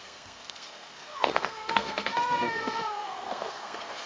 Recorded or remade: remade